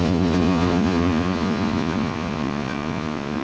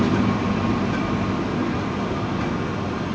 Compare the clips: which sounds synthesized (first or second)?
first